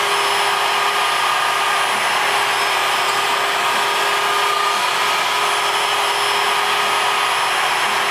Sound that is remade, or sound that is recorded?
recorded